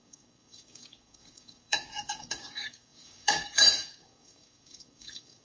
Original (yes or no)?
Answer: no